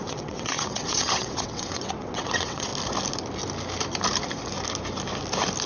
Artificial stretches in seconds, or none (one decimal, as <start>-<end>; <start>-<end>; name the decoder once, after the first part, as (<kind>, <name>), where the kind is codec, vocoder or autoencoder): 0.0-2.7 (vocoder, WaveNeXt)